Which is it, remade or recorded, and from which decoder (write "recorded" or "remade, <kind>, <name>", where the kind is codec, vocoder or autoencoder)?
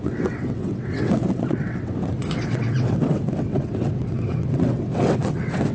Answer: remade, vocoder, WaveNeXt